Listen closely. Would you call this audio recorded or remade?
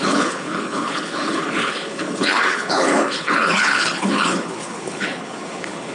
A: remade